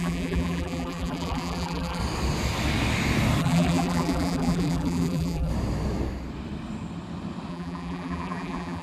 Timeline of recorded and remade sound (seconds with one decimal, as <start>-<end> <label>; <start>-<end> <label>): 0.0-2.0 remade; 2.0-3.4 recorded; 3.4-5.5 remade; 5.5-7.5 recorded; 7.5-8.8 remade